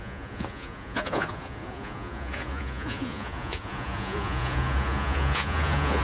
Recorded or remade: remade